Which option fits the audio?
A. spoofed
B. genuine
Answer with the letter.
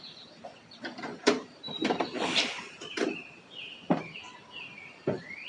A